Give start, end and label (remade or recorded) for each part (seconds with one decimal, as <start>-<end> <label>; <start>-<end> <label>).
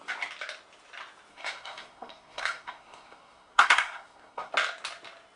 0.0-1.3 recorded; 1.3-4.5 remade; 4.5-5.4 recorded